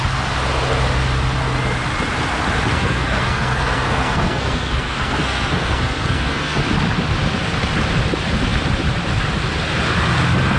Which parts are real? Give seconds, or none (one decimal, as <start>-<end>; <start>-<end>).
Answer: 0.0-2.7; 6.6-10.6